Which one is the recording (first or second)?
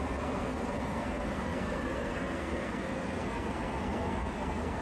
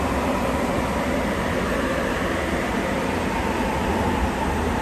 second